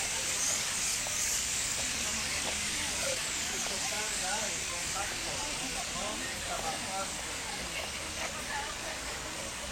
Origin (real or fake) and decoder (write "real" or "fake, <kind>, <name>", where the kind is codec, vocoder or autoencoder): fake, codec, DAC